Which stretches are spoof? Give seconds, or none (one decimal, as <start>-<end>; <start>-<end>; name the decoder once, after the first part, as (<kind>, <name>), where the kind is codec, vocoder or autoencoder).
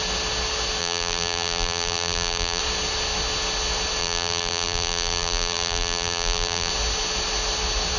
0.8-2.6 (vocoder, BigVGAN v2); 4.0-6.7